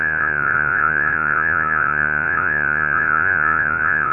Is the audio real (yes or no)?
no